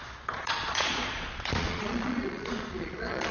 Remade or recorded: remade